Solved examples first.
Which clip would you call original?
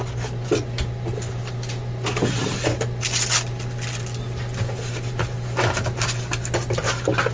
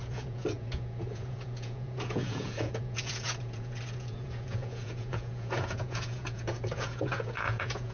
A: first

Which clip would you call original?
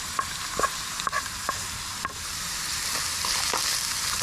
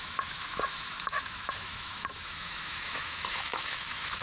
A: first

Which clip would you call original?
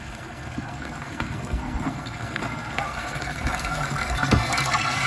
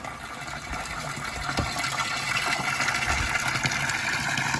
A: second